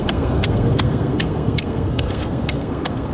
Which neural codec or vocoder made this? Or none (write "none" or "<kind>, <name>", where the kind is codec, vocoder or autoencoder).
codec, SNAC